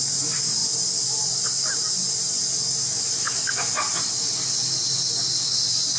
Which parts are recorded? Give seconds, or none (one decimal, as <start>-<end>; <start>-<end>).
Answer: 0.0-6.0